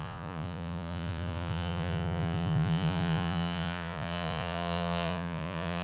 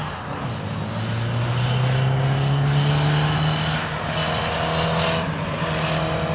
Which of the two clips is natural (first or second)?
second